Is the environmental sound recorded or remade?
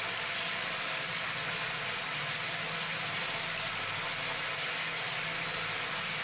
recorded